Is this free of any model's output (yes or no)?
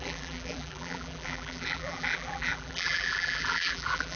no